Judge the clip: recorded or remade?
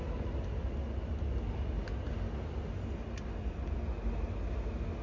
recorded